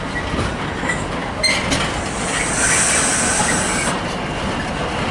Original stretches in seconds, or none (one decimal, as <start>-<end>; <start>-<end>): 0.0-5.1